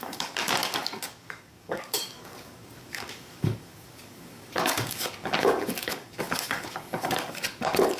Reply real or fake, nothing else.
fake